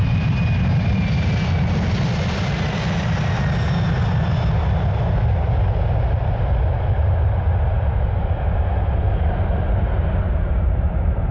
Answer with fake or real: real